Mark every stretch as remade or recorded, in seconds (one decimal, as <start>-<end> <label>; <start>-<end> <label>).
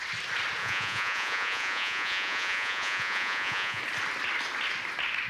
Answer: 0.0-0.6 recorded; 0.6-3.8 remade; 3.8-5.3 recorded